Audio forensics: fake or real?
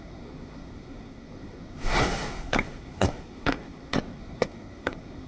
fake